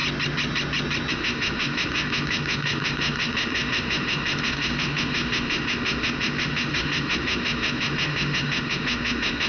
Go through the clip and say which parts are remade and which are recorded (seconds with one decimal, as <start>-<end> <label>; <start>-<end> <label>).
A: 0.0-1.1 recorded; 1.1-9.5 remade